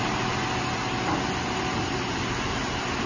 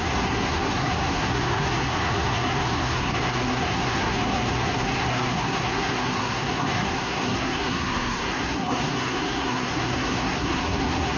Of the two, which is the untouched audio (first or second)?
first